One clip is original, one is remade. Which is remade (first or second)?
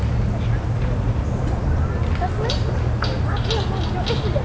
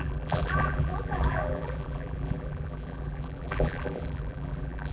second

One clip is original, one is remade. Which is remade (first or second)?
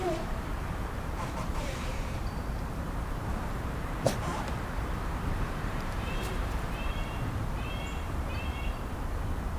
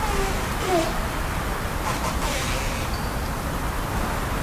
first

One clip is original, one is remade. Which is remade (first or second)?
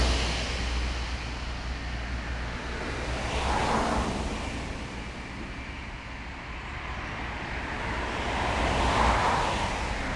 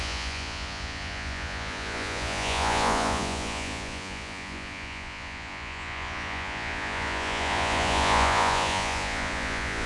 second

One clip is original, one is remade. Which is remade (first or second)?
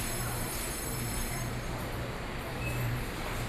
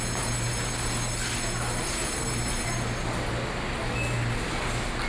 first